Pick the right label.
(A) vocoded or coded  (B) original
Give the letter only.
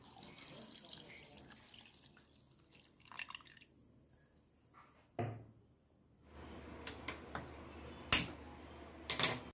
B